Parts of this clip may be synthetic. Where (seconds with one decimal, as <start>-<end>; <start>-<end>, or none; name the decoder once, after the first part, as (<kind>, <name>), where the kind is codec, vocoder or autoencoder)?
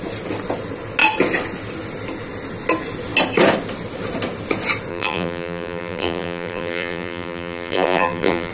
4.9-8.5 (vocoder, BigVGAN v2)